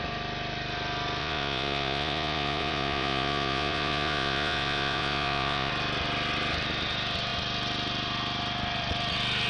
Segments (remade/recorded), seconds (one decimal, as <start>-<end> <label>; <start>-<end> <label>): 0.0-1.2 recorded; 1.2-5.7 remade; 5.7-9.5 recorded